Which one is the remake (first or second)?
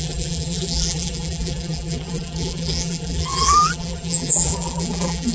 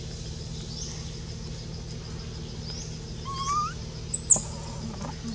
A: first